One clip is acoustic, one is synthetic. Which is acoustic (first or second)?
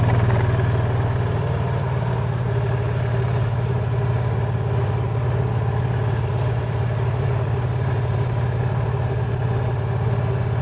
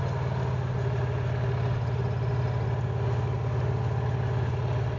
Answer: second